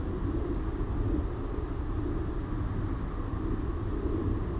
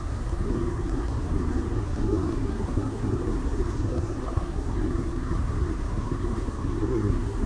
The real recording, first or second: first